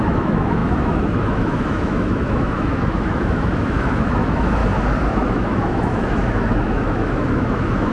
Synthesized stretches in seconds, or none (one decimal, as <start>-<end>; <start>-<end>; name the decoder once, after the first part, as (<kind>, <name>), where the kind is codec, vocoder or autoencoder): 0.0-4.6 (autoencoder, DAC-VAE); 5.1-7.9